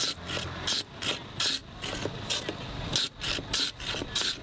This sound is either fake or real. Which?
real